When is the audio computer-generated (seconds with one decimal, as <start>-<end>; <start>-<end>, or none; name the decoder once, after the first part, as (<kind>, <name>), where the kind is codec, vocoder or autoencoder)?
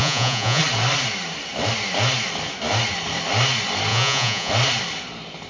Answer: 0.0-0.6 (vocoder, Vocos); 3.9-4.5